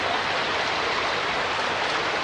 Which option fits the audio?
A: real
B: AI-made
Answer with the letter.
A